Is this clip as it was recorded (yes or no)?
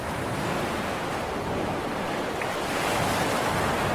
yes